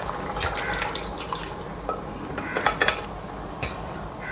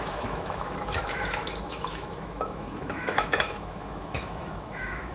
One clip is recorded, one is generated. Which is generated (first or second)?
second